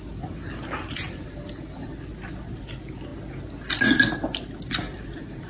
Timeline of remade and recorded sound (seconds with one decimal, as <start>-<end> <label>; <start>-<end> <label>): 0.0-5.5 recorded